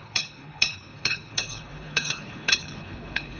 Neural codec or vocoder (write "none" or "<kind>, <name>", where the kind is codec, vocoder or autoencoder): codec, HILCodec